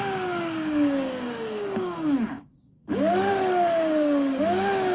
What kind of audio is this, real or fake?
fake